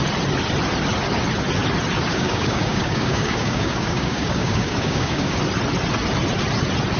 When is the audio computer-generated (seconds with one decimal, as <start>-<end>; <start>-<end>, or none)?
2.1-5.4